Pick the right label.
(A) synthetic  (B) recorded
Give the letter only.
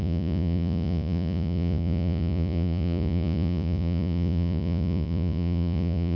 A